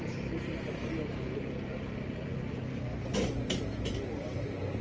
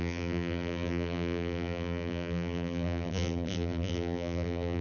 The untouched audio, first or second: first